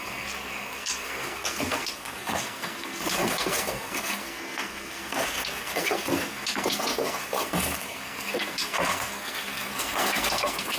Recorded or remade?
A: remade